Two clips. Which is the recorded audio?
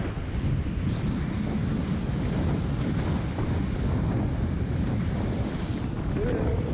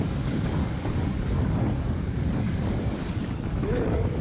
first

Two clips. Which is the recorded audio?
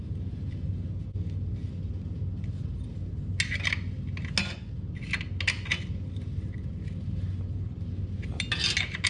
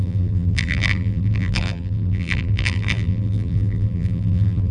first